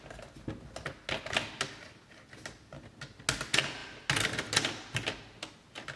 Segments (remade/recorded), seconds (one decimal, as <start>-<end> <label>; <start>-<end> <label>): 0.0-6.0 recorded